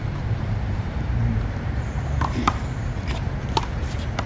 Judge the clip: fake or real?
fake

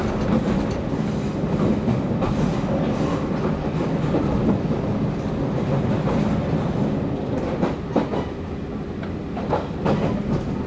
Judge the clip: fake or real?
real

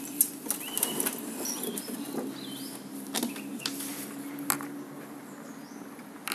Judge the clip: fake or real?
real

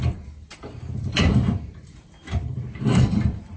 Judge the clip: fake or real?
fake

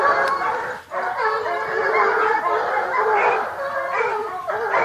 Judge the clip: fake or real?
real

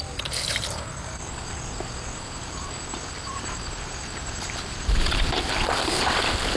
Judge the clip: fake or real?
fake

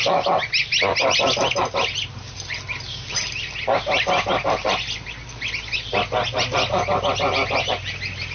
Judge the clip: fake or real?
real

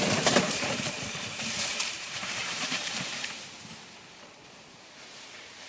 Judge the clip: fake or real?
fake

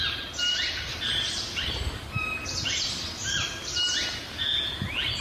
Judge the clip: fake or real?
real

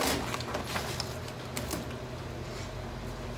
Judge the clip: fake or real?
real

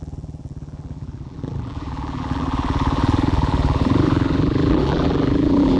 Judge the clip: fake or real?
fake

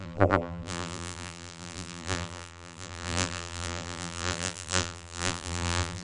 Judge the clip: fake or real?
fake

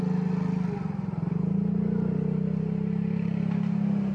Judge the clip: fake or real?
real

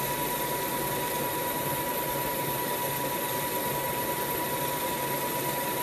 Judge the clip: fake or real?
real